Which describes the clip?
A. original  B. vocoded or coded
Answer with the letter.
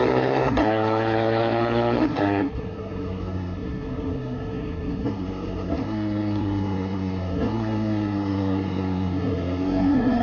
B